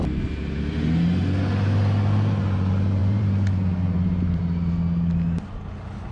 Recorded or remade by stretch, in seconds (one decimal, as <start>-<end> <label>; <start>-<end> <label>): 0.0-3.0 recorded; 3.0-4.4 remade; 4.4-6.1 recorded